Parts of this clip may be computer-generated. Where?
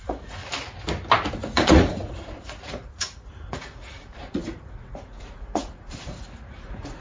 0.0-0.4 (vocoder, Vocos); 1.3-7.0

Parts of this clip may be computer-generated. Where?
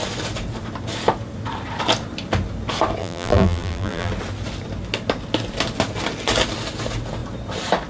3.0-4.1 (vocoder, BigVGAN v2)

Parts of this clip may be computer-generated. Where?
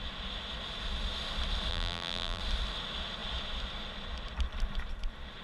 1.7-2.4 (vocoder, BigVGAN v2)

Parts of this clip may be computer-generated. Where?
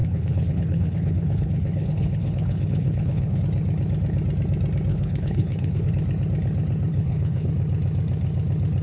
0.0-3.4 (codec, HILCodec); 4.9-5.9; 6.9-7.5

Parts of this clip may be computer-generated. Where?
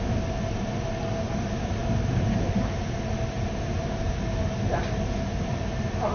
none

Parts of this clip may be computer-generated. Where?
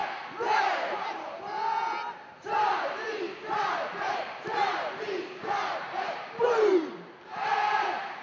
0.6-1.7 (vocoder, BigVGAN v2); 2.4-8.2